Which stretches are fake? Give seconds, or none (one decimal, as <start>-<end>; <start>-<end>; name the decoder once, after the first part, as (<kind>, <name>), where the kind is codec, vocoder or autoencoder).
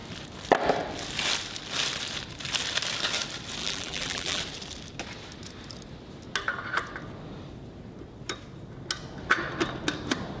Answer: 3.6-4.4 (vocoder, BigVGAN v2)